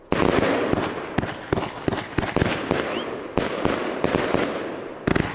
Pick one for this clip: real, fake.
real